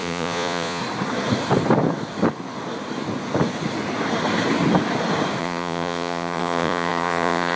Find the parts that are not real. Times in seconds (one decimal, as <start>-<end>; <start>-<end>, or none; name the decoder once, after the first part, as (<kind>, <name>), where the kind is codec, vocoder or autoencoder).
0.0-0.8 (vocoder, Vocos); 5.4-7.6

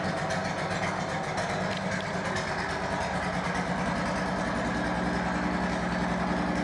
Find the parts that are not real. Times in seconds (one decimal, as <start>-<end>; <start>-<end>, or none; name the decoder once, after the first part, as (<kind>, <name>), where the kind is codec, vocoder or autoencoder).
none

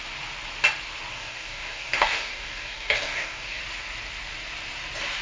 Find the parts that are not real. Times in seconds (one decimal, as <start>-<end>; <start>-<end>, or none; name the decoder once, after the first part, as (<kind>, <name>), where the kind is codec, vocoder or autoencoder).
1.1-3.6 (codec, DAC)

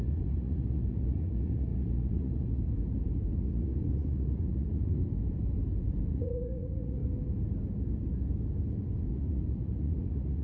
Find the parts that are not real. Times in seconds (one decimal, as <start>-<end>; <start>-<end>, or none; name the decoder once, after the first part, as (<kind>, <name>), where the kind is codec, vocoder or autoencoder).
0.0-2.7 (vocoder, Vocos); 3.3-5.0; 6.1-7.0; 9.1-10.4

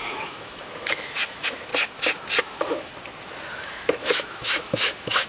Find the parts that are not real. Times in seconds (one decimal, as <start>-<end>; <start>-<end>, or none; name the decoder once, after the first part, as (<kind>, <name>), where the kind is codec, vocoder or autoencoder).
0.0-1.7 (autoencoder, DAC-VAE); 2.4-2.9; 3.6-5.3